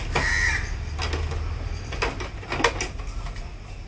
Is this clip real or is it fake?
real